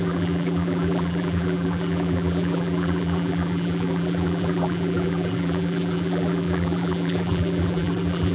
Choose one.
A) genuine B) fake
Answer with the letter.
B